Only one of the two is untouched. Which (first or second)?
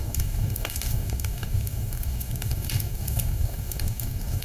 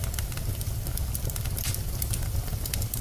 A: second